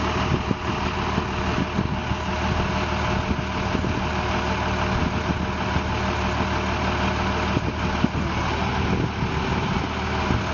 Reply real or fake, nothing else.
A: real